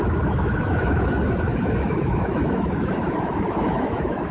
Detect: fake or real fake